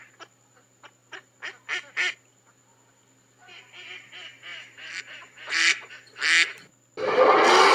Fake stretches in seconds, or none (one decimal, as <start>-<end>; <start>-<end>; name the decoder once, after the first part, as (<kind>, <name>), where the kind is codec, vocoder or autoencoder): 4.5-5.9 (vocoder, BigVGAN v2)

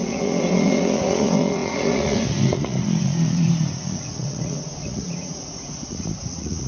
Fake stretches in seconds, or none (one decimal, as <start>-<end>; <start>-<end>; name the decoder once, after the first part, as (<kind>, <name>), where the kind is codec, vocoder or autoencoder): 0.0-6.7 (vocoder, Vocos)

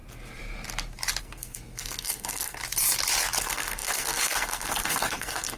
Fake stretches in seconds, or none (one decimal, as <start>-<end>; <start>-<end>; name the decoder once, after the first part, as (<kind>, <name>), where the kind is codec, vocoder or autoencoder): 1.2-2.6 (codec, SNAC); 3.4-5.6

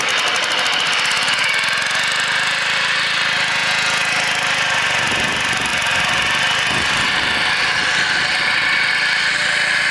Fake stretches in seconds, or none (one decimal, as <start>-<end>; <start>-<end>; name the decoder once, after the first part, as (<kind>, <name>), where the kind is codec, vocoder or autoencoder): 3.6-4.1 (vocoder, Vocos)

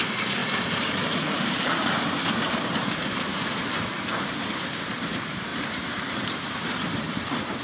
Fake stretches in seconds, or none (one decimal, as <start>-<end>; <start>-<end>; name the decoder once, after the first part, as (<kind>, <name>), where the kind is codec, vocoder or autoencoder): 0.0-7.6 (vocoder, BigVGAN v2)

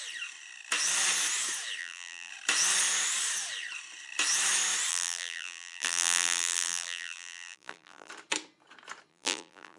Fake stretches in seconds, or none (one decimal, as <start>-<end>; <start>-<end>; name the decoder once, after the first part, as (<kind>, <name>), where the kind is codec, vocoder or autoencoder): 1.8-2.3 (vocoder, BigVGAN v2); 4.9-8.1; 9.1-9.8

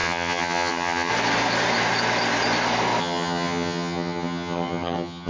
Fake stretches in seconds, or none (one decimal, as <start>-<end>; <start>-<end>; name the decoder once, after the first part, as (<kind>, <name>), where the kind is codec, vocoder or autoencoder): 0.0-1.1 (vocoder, HiFi-GAN); 3.0-5.3

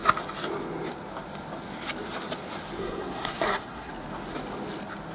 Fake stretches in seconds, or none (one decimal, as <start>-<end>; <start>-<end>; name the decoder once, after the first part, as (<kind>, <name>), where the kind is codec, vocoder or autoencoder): 2.8-3.9 (codec, SNAC)